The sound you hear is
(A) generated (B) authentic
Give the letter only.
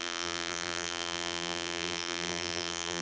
A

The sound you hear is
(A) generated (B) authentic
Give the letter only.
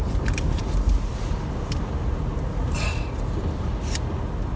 B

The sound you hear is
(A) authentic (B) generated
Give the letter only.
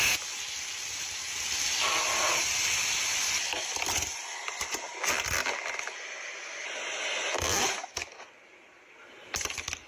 A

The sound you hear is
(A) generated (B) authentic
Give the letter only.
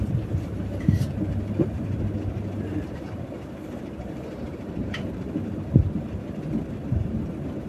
A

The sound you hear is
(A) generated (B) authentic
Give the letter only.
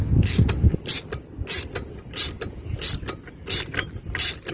B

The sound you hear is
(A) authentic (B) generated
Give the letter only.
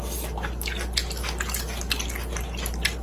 A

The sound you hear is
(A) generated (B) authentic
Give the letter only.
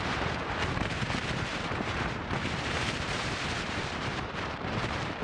A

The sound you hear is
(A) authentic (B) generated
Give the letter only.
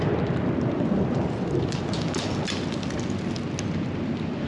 A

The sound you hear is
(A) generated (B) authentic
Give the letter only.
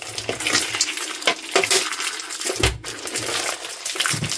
B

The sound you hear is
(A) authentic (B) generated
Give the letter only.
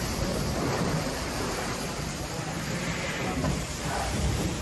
B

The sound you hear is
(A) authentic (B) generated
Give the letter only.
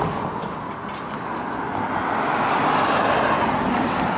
A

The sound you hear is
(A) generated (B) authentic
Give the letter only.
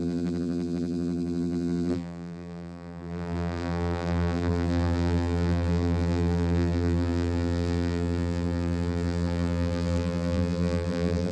A